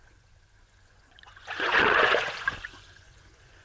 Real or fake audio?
fake